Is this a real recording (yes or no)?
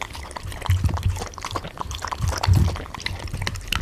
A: yes